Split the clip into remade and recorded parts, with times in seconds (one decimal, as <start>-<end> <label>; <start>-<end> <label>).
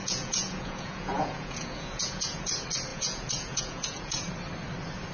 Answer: 0.0-2.5 remade; 2.5-2.9 recorded; 2.9-4.3 remade; 4.3-5.1 recorded